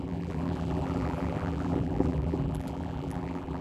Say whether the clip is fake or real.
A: fake